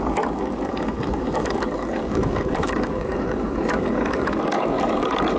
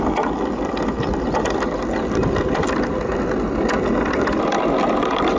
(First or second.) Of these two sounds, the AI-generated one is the first